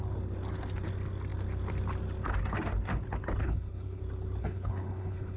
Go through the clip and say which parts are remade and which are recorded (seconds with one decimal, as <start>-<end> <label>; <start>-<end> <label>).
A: 0.0-3.4 recorded; 3.4-4.0 remade; 4.0-4.4 recorded; 4.4-5.4 remade